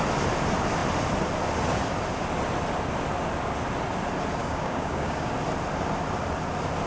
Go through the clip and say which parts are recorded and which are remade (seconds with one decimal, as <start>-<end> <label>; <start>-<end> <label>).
0.0-4.4 recorded; 4.4-5.3 remade; 5.3-6.9 recorded